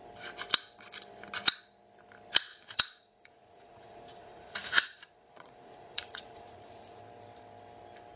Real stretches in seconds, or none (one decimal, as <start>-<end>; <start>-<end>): 0.0-2.5; 7.0-8.2